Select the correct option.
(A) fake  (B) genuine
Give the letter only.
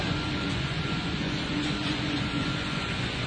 A